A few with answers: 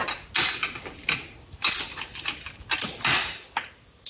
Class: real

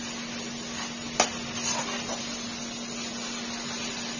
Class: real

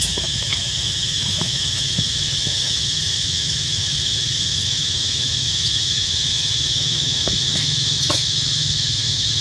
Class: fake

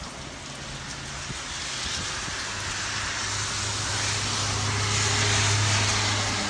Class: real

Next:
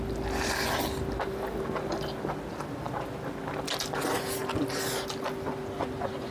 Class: real